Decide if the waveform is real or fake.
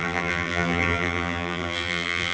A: fake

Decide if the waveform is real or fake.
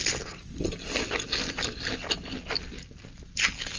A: real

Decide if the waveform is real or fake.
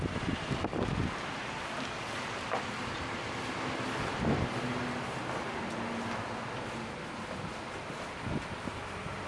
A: real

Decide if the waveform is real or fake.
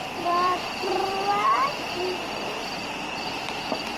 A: fake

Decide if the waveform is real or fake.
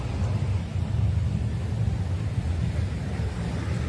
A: real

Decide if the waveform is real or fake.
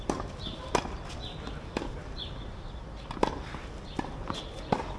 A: real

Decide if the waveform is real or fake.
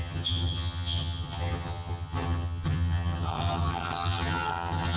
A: fake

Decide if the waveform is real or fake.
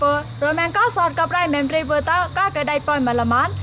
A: real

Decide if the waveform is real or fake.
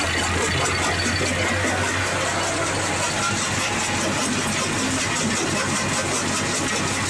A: real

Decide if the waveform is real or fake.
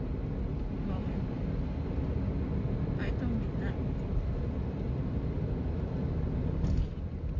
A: real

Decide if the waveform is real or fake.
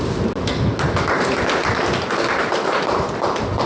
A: real